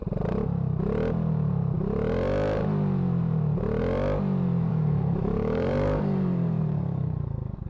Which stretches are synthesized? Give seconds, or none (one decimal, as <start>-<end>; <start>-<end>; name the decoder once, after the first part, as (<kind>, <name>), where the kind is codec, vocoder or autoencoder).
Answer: 4.7-7.7 (codec, DAC)